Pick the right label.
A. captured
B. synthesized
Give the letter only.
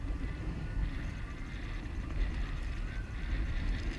B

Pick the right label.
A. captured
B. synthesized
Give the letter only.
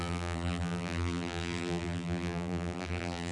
B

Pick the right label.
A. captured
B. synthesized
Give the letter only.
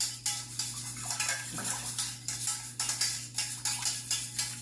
A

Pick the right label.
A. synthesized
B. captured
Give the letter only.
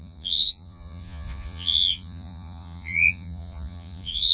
A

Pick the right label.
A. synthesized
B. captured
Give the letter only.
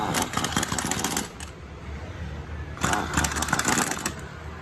B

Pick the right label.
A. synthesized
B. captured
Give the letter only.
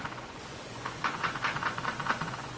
A